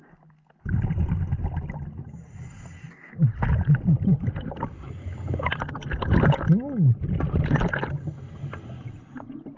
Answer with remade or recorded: recorded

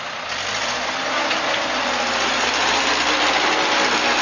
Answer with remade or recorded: recorded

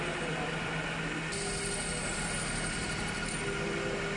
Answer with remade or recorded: recorded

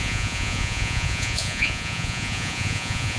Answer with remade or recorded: remade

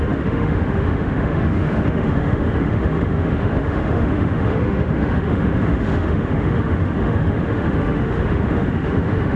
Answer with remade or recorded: remade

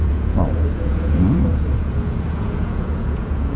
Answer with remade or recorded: remade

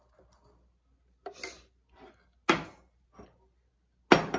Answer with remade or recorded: recorded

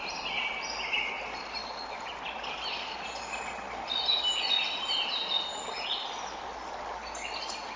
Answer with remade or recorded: recorded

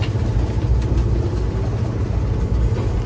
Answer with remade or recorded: recorded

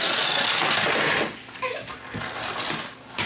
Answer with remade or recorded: recorded